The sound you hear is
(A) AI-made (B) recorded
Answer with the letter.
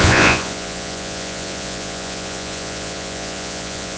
A